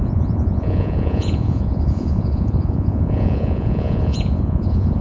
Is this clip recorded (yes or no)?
no